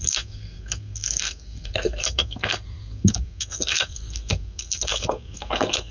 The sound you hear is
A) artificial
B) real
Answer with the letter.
A